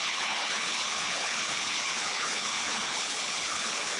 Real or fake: fake